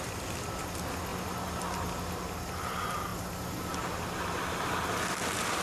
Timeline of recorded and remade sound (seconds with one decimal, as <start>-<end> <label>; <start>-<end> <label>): 0.0-1.1 recorded; 1.1-1.6 remade; 1.6-5.6 recorded